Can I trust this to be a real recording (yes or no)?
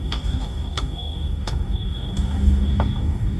no